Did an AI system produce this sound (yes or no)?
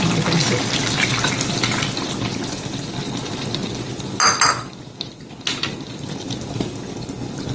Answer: no